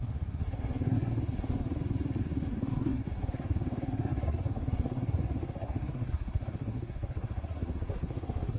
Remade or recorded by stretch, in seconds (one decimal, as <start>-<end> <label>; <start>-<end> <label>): 0.0-8.6 remade